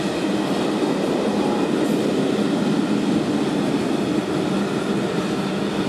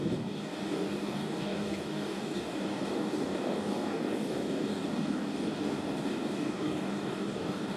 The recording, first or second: first